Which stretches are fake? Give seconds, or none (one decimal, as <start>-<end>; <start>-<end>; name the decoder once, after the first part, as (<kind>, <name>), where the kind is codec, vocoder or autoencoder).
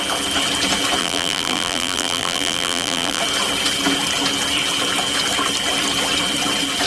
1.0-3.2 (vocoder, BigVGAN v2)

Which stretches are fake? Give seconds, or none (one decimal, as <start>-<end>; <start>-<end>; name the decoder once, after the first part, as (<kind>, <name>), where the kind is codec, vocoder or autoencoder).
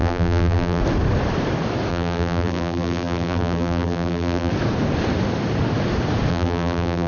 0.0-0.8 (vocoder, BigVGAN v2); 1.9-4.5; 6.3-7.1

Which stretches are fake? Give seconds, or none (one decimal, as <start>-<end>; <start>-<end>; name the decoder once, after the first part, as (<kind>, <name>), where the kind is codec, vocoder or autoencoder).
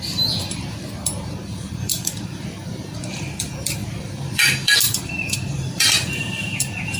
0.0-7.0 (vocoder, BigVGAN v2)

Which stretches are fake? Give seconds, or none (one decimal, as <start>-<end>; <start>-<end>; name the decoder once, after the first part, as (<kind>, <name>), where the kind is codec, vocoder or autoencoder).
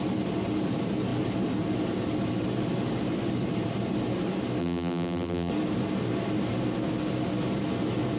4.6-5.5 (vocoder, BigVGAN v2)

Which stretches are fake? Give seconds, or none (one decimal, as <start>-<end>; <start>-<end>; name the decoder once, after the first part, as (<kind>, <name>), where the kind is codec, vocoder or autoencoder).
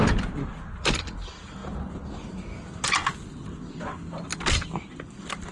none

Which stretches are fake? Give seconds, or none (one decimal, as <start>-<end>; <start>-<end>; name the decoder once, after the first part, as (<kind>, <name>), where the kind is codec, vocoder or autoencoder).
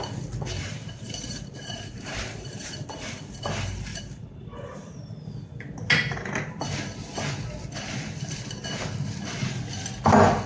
0.6-3.2 (vocoder, BigVGAN v2); 3.9-5.2